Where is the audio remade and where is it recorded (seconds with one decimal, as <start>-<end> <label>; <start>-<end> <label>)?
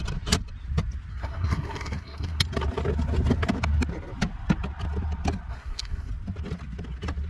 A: 0.0-1.1 recorded; 1.1-2.4 remade; 2.4-5.5 recorded; 5.5-6.1 remade; 6.1-7.3 recorded